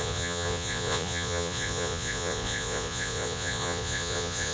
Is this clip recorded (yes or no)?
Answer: no